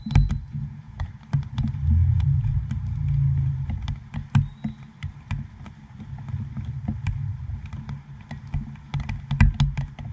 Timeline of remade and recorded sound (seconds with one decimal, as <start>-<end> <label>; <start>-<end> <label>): 0.0-0.5 recorded; 0.5-1.1 remade; 1.1-2.0 recorded; 2.0-2.6 remade; 2.6-10.1 recorded